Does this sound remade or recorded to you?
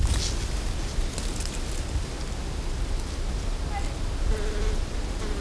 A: recorded